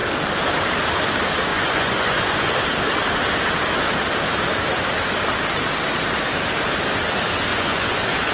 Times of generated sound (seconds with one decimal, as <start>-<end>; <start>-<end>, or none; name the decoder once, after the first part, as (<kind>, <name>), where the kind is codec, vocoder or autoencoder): 1.5-2.5 (vocoder, Vocos); 7.5-8.3